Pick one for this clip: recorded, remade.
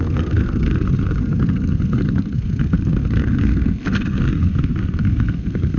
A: remade